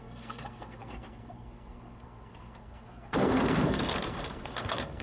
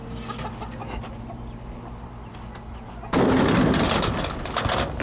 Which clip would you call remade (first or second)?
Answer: first